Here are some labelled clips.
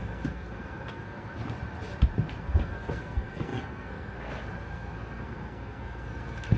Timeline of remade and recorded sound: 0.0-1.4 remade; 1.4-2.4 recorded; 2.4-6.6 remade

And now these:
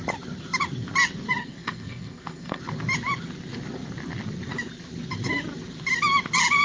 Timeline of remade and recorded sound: 0.0-1.4 recorded; 1.4-2.6 remade; 2.6-6.6 recorded